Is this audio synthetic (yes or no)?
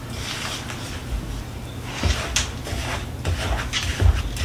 no